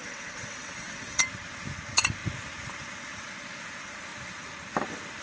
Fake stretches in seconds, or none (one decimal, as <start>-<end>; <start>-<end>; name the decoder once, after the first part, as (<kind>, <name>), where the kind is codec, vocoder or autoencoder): 0.0-1.2 (vocoder, WaveNeXt)